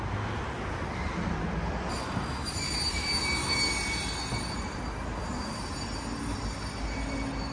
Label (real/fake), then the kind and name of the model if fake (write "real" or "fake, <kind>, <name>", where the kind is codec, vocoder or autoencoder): real